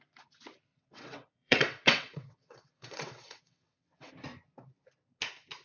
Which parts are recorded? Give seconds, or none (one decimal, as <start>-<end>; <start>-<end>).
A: 0.0-0.7; 4.1-5.6